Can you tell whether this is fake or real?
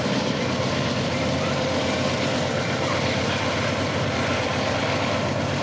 fake